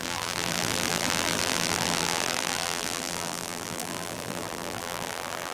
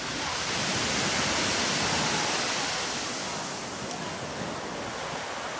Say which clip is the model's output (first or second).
first